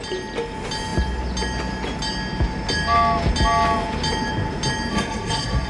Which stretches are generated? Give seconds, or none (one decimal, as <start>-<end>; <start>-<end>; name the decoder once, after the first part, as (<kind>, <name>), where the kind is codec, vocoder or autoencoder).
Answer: 4.9-5.7 (codec, SNAC)